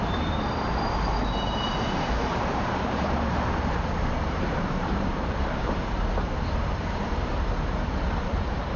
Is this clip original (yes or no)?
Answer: no